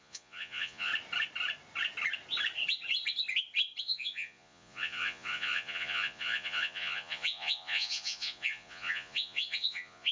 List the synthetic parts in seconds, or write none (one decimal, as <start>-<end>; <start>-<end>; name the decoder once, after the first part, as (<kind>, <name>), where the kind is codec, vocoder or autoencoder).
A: 0.0-0.9 (vocoder, Vocos); 3.8-10.1